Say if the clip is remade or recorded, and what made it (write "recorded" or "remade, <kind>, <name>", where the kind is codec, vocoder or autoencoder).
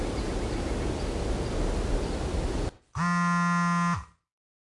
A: recorded